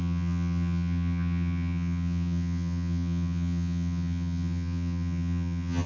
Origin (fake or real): fake